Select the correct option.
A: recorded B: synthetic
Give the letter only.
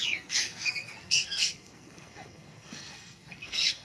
B